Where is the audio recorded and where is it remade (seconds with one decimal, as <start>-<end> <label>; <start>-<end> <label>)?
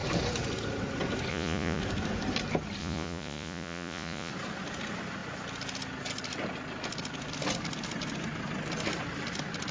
0.0-1.3 recorded; 1.3-1.8 remade; 1.8-2.8 recorded; 2.8-4.3 remade; 4.3-9.7 recorded